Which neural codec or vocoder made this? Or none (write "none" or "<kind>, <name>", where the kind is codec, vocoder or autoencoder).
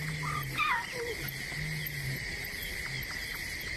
none